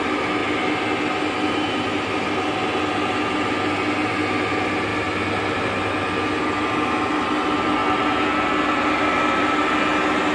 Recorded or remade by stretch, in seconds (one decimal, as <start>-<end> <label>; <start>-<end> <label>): 0.0-4.9 remade; 4.9-6.4 recorded; 6.4-10.3 remade